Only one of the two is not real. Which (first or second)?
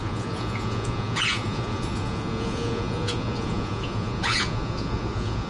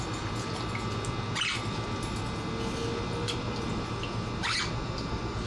first